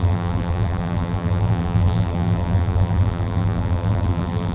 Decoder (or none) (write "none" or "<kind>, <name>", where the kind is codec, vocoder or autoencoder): vocoder, BigVGAN v2